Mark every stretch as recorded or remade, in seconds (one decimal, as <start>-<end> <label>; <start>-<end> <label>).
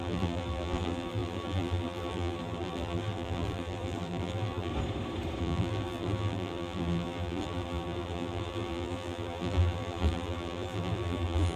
0.0-4.7 remade; 4.7-5.4 recorded; 5.4-11.6 remade